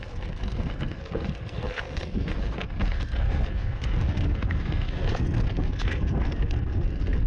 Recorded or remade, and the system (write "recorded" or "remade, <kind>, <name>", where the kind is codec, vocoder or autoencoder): remade, codec, SNAC